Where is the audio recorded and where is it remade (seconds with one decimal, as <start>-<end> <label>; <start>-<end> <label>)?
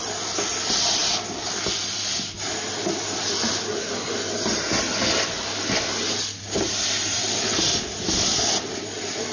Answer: 0.0-9.3 recorded